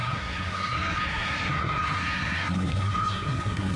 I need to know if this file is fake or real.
fake